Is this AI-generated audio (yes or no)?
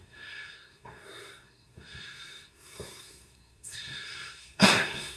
yes